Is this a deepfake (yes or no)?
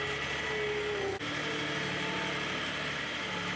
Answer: no